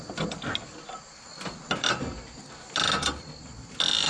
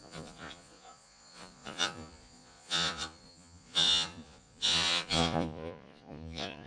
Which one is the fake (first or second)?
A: second